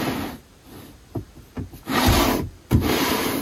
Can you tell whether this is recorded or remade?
recorded